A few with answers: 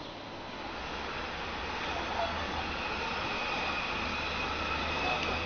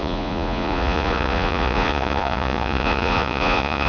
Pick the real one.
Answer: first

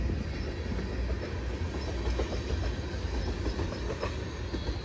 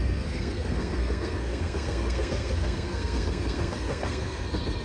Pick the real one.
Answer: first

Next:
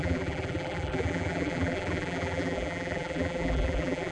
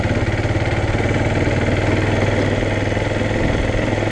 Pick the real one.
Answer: second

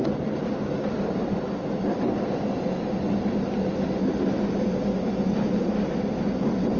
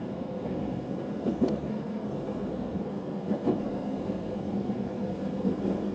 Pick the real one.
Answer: first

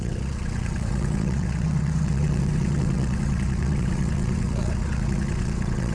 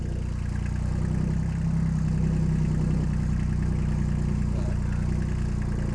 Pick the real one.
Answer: second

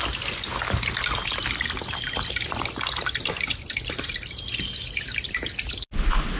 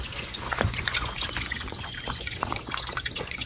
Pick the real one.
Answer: first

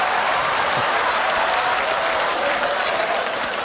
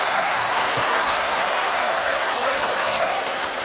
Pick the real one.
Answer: first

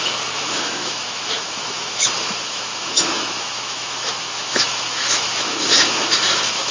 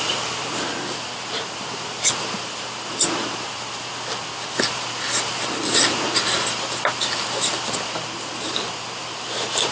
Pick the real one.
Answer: second